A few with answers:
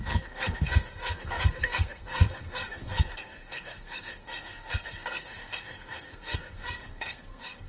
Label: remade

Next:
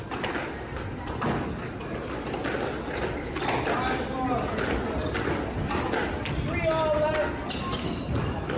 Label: recorded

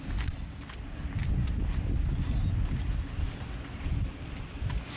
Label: recorded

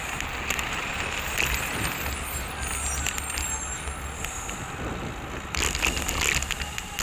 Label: recorded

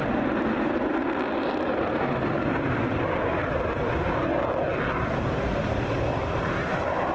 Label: recorded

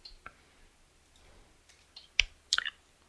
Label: recorded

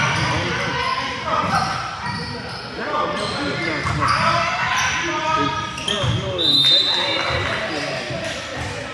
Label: recorded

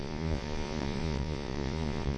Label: remade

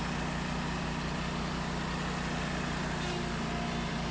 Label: recorded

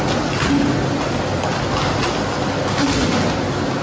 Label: recorded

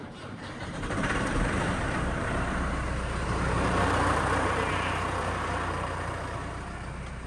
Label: remade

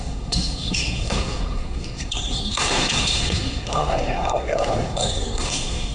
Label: remade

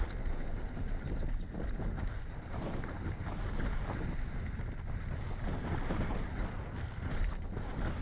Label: recorded